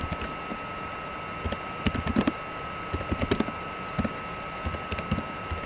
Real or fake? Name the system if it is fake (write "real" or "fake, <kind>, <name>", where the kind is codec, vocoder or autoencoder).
fake, vocoder, BigVGAN v2